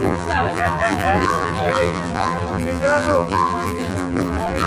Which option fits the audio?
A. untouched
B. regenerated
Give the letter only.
B